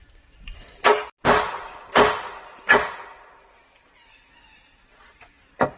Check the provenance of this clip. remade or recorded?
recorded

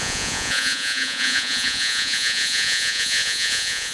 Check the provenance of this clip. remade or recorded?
remade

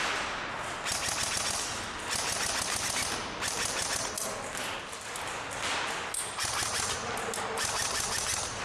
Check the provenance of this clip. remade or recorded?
recorded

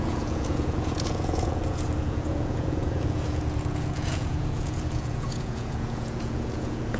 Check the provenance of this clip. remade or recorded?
remade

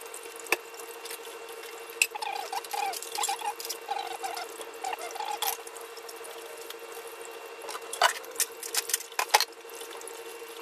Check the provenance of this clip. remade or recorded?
recorded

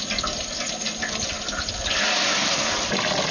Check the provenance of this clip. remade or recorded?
recorded